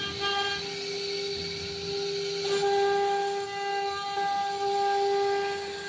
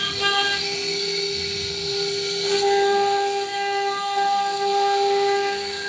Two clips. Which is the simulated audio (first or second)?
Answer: second